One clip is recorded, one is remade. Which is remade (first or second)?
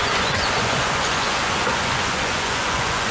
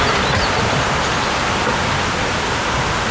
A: first